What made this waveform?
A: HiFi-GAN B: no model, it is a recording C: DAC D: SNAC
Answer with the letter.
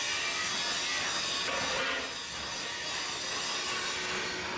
B